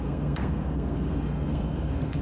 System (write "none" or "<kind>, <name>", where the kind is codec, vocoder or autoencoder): codec, SNAC